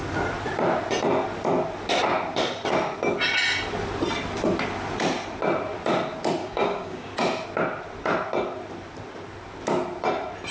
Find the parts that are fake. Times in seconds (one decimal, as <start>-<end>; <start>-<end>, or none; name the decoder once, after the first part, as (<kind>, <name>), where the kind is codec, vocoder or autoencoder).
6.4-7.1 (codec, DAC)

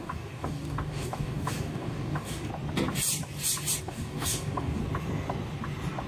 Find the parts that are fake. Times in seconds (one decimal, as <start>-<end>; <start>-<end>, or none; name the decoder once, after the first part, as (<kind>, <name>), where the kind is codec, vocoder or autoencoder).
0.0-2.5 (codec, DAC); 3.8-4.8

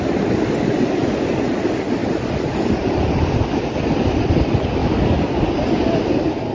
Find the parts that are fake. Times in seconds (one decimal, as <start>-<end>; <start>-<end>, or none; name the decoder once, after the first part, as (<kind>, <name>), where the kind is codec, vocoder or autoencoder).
4.8-5.4 (codec, DAC)

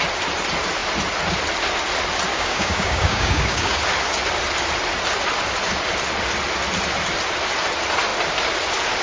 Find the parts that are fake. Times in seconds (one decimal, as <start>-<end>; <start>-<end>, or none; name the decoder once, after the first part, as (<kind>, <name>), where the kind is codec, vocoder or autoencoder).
2.3-3.8 (codec, DAC)

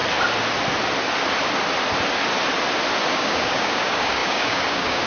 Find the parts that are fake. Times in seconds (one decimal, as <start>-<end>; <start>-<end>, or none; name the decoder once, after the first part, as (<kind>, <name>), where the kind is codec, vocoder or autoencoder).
3.1-5.1 (codec, DAC)

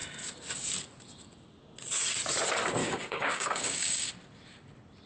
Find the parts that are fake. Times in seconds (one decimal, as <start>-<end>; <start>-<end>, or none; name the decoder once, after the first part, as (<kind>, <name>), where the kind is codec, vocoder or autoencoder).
2.8-4.1 (codec, DAC)